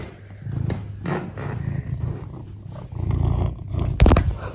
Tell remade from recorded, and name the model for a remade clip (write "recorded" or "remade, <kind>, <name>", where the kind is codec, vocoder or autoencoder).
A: recorded